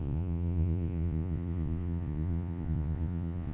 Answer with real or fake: fake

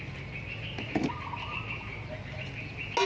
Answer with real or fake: real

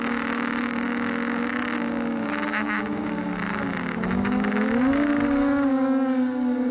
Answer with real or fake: fake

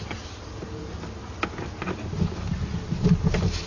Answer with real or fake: real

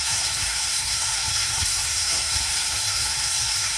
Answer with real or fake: fake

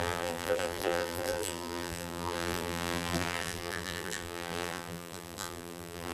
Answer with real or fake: fake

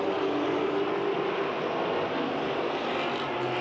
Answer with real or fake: real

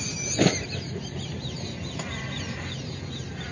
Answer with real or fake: real